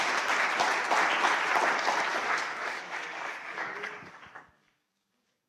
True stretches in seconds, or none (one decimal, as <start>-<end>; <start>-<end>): 0.0-2.1